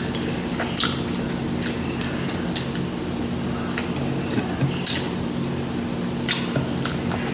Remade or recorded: recorded